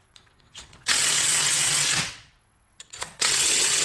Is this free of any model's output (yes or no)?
no